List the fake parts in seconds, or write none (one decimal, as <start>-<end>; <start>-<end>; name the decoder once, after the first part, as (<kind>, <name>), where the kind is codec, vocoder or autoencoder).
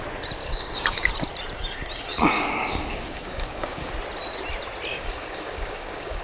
0.4-1.1 (codec, DAC); 2.1-3.9; 4.9-6.2